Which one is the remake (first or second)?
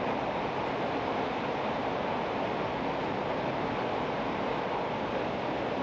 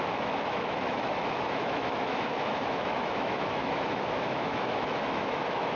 second